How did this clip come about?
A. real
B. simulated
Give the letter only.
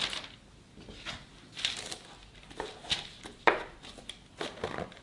A